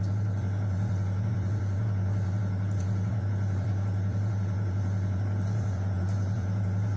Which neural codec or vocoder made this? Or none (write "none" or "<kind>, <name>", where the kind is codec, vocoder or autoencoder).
vocoder, Vocos